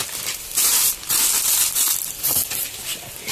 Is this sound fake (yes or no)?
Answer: no